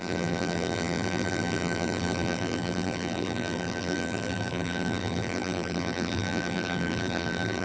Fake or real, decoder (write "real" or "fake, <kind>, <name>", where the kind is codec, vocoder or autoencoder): fake, vocoder, BigVGAN v2